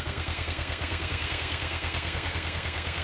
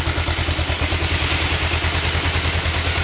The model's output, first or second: first